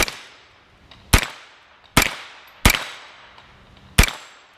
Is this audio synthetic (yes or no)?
no